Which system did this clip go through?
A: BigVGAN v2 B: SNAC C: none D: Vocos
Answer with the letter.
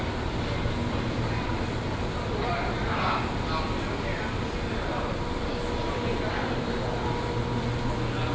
C